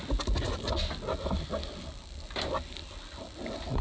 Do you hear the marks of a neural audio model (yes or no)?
no